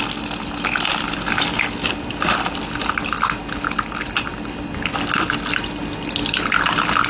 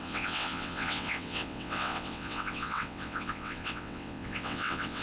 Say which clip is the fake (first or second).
second